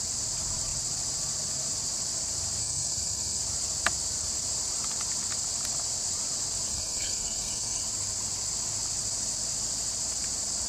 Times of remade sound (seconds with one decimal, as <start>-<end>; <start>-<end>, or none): 2.6-3.4; 6.7-7.8

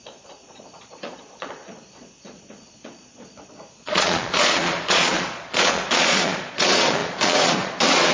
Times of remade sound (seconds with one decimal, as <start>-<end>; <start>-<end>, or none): 0.0-8.1

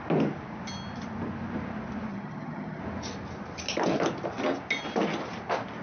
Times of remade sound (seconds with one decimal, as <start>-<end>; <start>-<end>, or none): 2.1-2.8